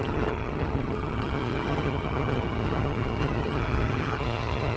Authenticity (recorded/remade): remade